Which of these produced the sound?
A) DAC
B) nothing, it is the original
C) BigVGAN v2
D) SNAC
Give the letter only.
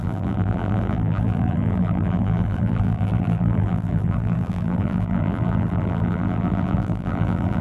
C